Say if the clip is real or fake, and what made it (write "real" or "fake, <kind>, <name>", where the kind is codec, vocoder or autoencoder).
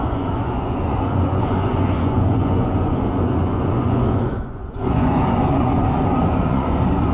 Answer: fake, vocoder, Vocos